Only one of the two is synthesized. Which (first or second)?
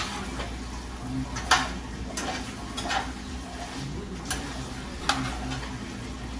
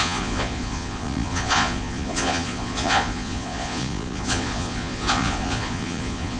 second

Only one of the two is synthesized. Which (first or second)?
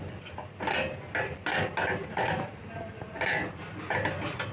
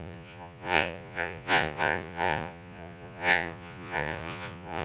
second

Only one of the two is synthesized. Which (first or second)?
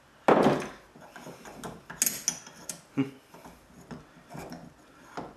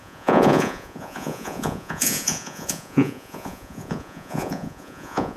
second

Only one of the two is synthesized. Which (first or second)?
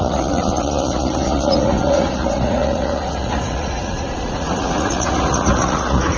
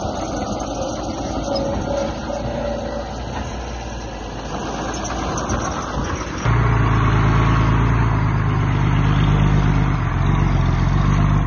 first